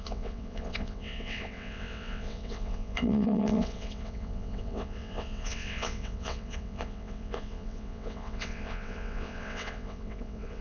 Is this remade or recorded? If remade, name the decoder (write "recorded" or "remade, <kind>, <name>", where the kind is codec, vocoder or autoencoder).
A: remade, vocoder, WaveNeXt